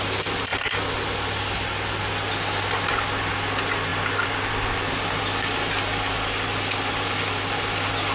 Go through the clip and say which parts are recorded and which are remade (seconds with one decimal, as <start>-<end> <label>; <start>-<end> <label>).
0.0-8.1 recorded